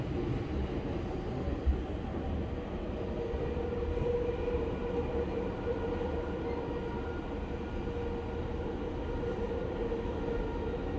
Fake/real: real